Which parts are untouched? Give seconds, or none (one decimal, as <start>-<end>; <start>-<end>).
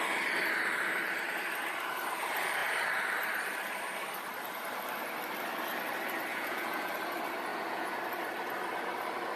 0.0-6.3; 6.9-7.5; 8.0-9.4